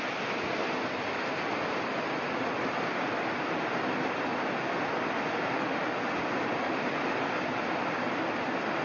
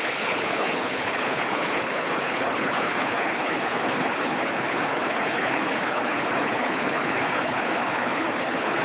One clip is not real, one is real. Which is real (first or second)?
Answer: first